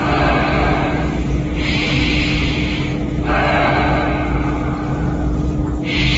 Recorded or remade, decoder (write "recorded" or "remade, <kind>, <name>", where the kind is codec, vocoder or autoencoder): recorded